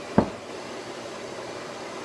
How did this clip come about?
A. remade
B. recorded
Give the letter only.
B